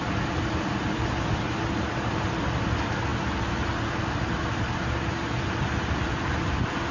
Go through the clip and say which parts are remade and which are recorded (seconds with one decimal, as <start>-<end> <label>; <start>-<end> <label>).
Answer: 0.0-6.9 recorded